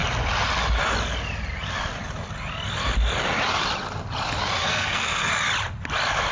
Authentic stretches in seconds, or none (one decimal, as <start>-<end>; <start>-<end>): 0.0-4.6; 5.3-6.3